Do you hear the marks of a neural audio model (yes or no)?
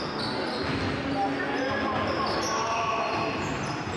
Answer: no